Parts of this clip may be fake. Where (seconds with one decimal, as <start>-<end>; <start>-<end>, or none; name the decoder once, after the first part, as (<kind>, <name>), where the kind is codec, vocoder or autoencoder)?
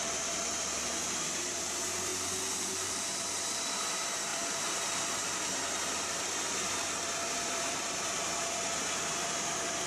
0.0-2.1 (vocoder, BigVGAN v2); 2.7-9.9